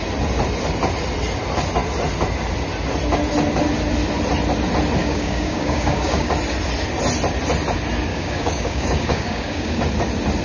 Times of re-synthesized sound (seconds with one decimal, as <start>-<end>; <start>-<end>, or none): 5.0-6.3; 8.1-9.8